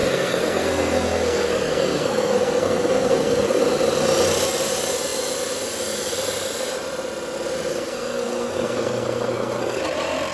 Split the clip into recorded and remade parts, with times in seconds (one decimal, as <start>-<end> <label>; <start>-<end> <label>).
0.0-3.6 remade; 3.6-7.7 recorded; 7.7-9.8 remade; 9.8-10.3 recorded